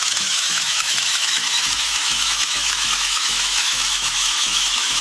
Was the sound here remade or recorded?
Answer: remade